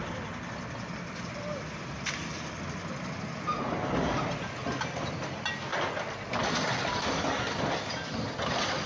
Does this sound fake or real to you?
real